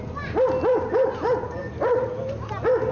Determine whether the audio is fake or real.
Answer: real